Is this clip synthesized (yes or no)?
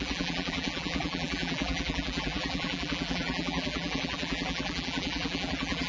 yes